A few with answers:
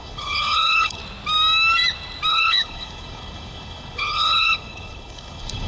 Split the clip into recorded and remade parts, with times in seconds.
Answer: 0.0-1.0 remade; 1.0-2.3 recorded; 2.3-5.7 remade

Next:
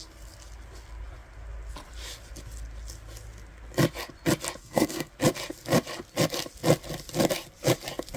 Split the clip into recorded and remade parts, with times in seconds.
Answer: 0.0-4.6 recorded; 4.6-5.1 remade; 5.1-8.2 recorded

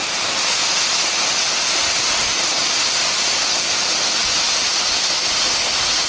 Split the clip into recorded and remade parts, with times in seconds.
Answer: 0.0-3.5 recorded; 3.5-6.1 remade

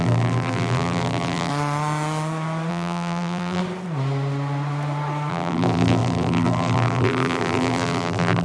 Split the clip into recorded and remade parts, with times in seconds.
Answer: 0.0-1.5 remade; 1.5-2.7 recorded; 2.7-3.6 remade; 3.6-5.3 recorded; 5.3-8.4 remade

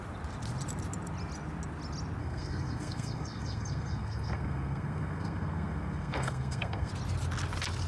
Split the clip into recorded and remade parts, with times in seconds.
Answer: 0.0-2.2 recorded; 2.2-6.9 remade; 6.9-7.9 recorded